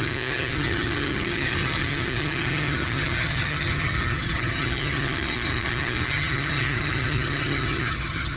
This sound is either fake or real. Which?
fake